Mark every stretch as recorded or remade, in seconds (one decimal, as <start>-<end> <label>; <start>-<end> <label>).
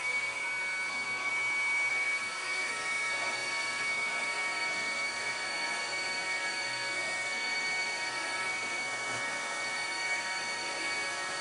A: 0.0-0.4 remade; 0.4-0.9 recorded; 0.9-1.3 remade; 1.3-1.9 recorded; 1.9-11.4 remade